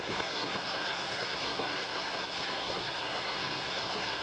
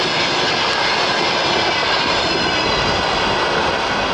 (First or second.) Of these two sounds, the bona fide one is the second